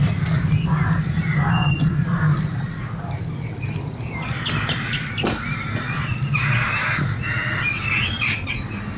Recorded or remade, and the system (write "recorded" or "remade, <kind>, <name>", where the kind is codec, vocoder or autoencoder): recorded